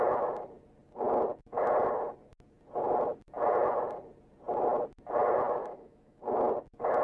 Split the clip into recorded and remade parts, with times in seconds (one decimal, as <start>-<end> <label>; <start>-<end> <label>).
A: 0.0-5.6 recorded; 5.6-6.2 remade; 6.2-7.0 recorded

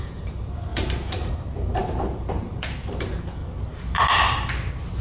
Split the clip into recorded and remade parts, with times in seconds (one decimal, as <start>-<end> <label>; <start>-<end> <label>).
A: 0.0-3.4 remade; 3.4-5.0 recorded

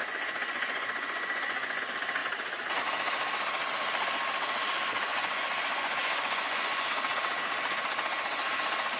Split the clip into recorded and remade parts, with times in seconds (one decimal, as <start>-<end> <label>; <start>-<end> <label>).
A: 0.0-1.8 remade; 1.8-5.1 recorded; 5.1-6.9 remade; 6.9-9.0 recorded

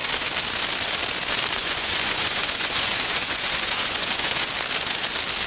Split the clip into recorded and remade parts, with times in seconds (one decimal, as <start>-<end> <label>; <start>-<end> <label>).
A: 0.0-1.6 recorded; 1.6-4.5 remade; 4.5-5.5 recorded

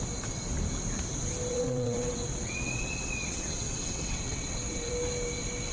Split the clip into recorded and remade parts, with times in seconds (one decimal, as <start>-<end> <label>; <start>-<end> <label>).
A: 0.0-1.5 recorded; 1.5-4.9 remade; 4.9-5.7 recorded

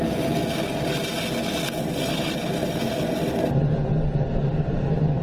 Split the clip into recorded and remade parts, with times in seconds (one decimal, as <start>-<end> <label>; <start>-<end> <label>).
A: 0.0-5.2 recorded

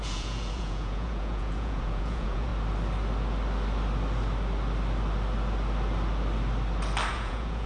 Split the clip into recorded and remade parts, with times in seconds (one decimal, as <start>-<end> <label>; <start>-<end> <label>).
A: 0.0-2.5 remade; 2.5-7.1 recorded; 7.1-7.7 remade

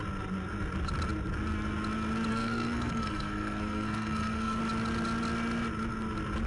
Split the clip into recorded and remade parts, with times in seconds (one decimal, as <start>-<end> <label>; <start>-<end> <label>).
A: 0.0-2.3 recorded; 2.3-4.6 remade; 4.6-6.5 recorded